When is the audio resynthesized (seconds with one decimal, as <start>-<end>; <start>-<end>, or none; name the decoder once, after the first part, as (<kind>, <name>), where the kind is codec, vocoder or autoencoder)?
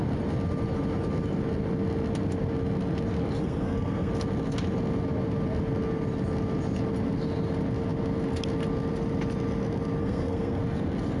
3.4-4.1 (codec, SNAC); 10.0-10.6